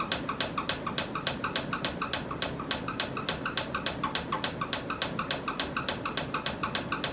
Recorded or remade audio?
recorded